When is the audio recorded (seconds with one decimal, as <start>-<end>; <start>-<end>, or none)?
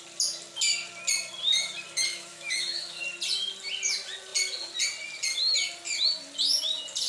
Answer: 0.0-2.1; 3.0-7.1